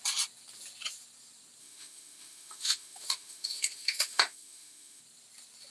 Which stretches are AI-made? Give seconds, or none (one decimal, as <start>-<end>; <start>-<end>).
1.6-5.0